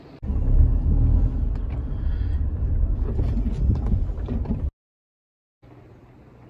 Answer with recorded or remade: recorded